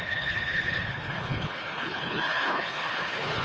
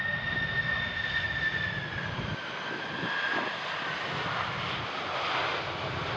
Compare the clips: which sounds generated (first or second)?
first